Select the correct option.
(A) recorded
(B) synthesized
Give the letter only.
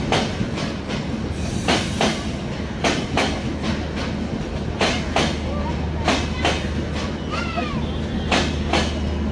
A